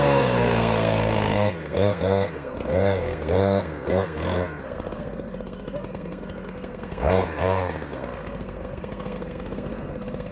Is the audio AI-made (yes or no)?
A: yes